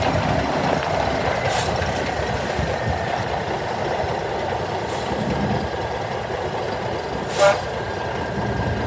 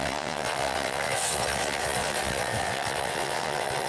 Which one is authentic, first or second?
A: first